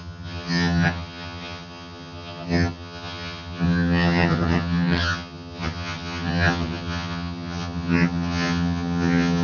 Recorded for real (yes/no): no